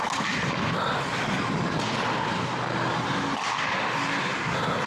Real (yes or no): yes